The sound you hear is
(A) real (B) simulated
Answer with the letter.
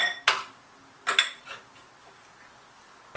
A